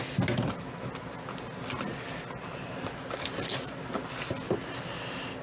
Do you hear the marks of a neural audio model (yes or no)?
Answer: no